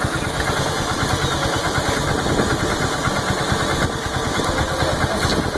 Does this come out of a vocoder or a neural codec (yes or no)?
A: no